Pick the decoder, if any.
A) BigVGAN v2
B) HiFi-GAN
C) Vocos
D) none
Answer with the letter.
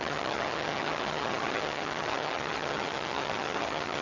B